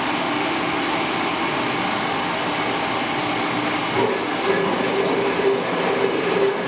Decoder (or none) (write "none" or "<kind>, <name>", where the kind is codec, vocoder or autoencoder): none